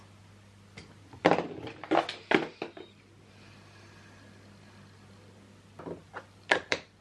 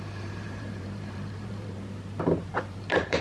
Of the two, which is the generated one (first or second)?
second